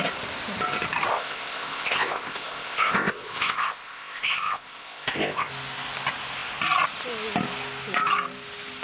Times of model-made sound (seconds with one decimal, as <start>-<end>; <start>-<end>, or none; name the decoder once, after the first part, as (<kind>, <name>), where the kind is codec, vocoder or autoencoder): 1.1-5.5 (codec, ZipCodec)